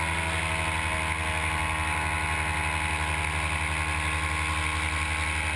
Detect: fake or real real